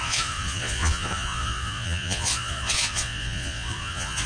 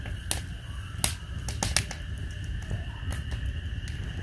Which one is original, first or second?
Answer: second